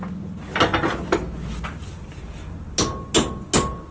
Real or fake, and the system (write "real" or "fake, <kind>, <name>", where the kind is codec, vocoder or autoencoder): real